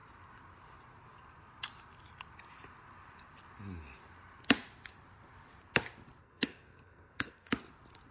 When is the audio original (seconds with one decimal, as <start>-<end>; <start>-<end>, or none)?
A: 0.0-6.2; 7.5-8.1